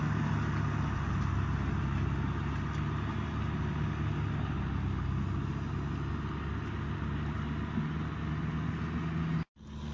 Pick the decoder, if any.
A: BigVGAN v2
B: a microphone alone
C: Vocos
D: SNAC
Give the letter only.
B